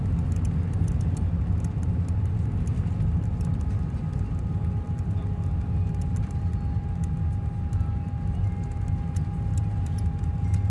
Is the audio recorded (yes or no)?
yes